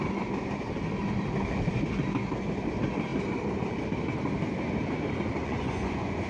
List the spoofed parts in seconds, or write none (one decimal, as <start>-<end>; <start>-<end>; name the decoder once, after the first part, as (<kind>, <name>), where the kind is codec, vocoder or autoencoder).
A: 5.4-6.3 (vocoder, Vocos)